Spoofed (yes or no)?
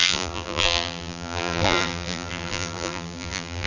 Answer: yes